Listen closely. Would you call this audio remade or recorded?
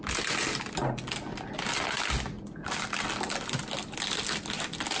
recorded